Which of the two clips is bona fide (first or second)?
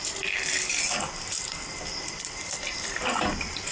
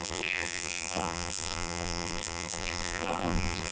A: first